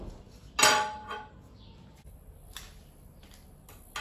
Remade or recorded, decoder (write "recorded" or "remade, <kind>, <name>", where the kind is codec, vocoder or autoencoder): recorded